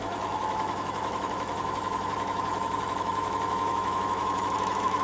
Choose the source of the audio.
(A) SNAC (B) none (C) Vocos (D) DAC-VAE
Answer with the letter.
D